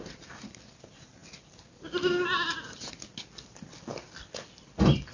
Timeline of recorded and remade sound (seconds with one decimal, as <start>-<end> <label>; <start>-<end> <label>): 0.0-5.1 recorded